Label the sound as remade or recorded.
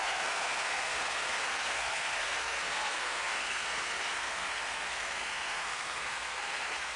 remade